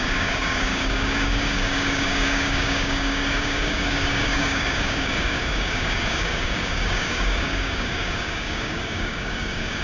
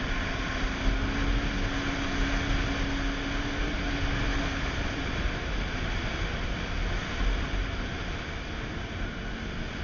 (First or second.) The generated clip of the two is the first